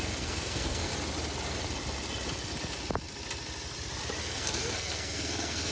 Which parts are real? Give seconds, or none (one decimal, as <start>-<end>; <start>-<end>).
0.9-4.2